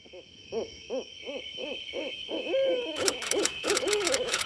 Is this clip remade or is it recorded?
remade